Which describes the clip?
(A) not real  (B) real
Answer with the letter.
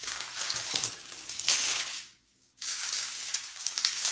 A